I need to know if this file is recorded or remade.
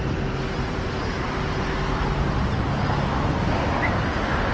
recorded